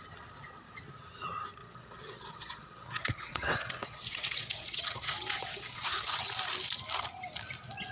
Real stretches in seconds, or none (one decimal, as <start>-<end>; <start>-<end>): 0.0-1.6; 6.3-7.9